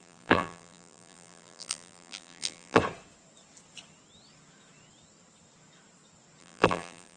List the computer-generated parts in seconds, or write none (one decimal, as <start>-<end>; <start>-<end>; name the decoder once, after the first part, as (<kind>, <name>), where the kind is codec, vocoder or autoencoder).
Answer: 0.0-2.8 (vocoder, BigVGAN v2); 6.4-7.2

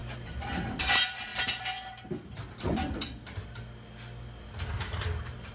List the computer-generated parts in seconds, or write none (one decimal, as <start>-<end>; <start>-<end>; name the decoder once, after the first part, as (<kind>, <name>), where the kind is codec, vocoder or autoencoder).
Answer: 0.0-1.3 (vocoder, BigVGAN v2); 4.6-5.5

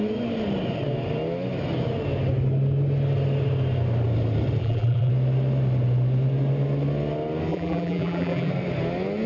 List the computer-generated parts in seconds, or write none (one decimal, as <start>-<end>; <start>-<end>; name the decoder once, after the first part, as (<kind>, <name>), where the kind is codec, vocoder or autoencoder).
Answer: 4.6-5.1 (vocoder, BigVGAN v2); 7.5-8.5